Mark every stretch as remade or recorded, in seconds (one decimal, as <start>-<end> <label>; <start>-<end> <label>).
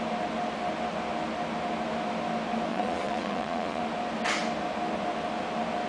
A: 0.0-2.7 recorded; 2.7-3.8 remade; 3.8-5.9 recorded